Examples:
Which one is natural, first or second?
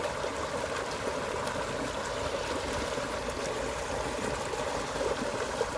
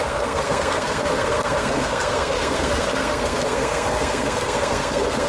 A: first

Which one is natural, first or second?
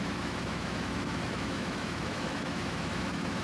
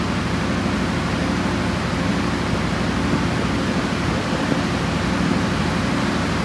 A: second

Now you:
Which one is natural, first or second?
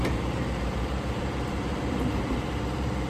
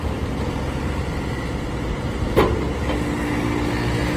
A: second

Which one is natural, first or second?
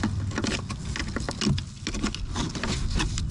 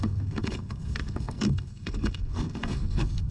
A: first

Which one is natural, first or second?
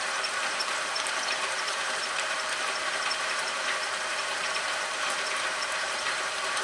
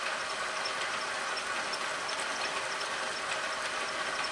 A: second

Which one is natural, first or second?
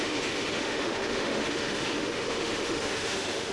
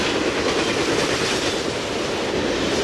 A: second